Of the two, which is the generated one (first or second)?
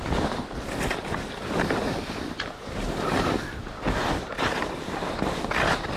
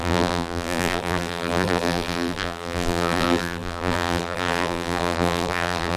second